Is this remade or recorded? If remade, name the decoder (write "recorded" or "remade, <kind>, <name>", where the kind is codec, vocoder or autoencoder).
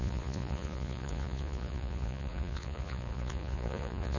remade, vocoder, Vocos